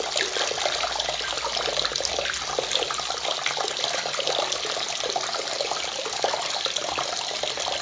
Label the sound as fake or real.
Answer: real